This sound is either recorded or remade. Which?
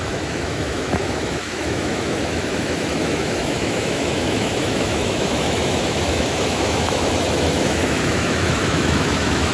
remade